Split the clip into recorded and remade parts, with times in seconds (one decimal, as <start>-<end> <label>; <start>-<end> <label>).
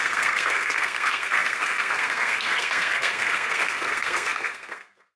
0.0-5.2 remade